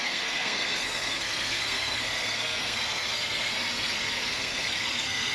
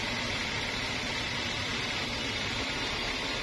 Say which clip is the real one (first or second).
second